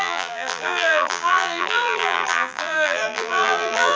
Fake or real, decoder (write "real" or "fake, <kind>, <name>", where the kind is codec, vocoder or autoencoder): fake, vocoder, BigVGAN v2